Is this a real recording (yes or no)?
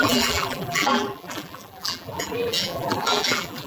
no